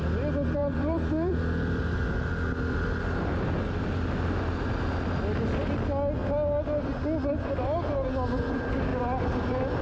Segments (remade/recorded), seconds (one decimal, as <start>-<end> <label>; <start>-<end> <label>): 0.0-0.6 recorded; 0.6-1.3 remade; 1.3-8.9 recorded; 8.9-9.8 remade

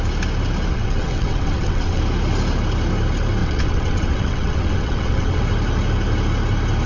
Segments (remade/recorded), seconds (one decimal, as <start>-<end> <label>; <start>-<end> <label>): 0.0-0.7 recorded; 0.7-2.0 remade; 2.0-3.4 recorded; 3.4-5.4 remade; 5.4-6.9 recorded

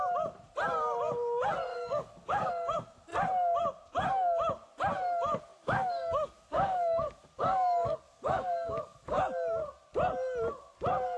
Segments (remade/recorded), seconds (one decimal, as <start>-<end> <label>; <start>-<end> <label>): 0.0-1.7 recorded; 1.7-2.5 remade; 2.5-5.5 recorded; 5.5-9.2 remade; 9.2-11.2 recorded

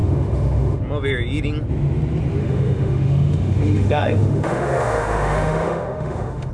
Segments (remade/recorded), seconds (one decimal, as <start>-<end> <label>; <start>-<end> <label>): 0.0-0.8 remade; 0.8-2.4 recorded; 2.4-6.5 remade